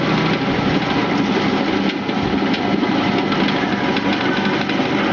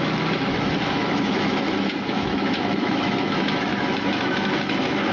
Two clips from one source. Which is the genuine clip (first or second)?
first